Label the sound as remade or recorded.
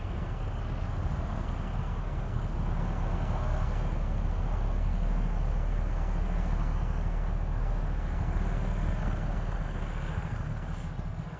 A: remade